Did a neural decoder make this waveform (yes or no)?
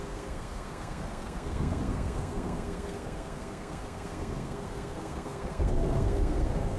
yes